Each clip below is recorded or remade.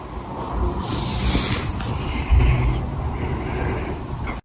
recorded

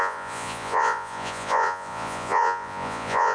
remade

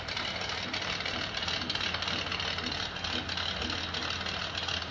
remade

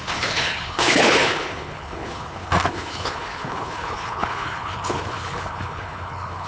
remade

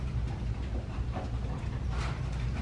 remade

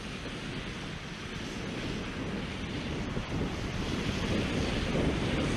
recorded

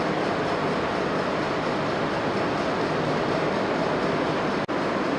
recorded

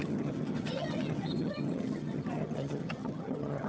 remade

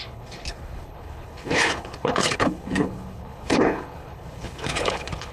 remade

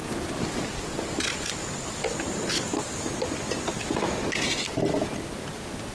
recorded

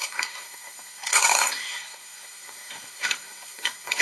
remade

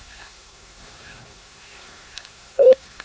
remade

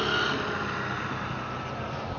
recorded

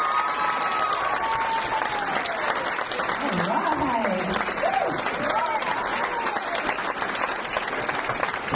recorded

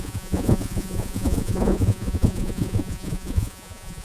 remade